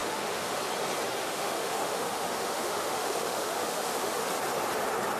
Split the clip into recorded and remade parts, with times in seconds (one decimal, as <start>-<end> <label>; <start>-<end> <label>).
0.0-0.6 remade; 0.6-1.2 recorded; 1.2-4.3 remade; 4.3-5.2 recorded